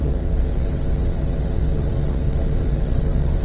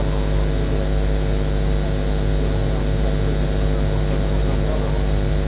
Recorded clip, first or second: second